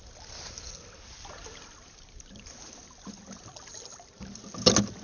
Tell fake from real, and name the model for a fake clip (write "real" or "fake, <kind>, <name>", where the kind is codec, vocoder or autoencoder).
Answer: fake, vocoder, BigVGAN v2